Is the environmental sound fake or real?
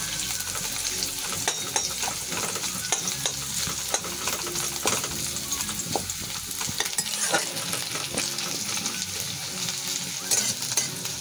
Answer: real